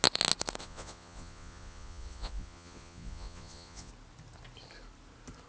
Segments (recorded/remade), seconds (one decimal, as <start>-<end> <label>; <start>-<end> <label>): 0.0-0.6 recorded; 0.6-3.9 remade; 3.9-5.5 recorded